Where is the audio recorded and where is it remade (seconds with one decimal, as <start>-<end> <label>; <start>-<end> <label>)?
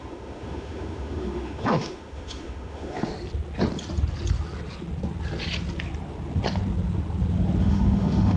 0.0-3.1 remade; 3.1-7.6 recorded; 7.6-8.4 remade